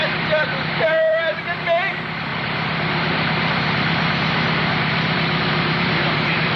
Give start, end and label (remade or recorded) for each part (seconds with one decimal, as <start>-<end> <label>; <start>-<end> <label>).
0.0-2.3 recorded; 2.3-6.6 remade